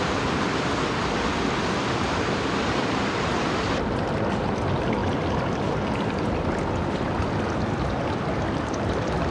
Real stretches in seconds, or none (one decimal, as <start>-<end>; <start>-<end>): 0.0-9.3